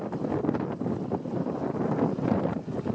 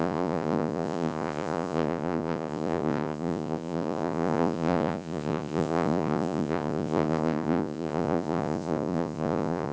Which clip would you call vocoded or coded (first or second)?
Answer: second